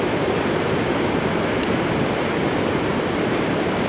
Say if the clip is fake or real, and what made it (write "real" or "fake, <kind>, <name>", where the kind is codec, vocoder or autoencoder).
real